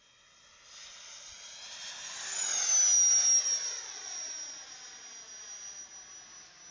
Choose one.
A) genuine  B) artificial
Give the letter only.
A